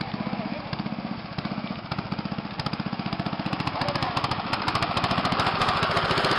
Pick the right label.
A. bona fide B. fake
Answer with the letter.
A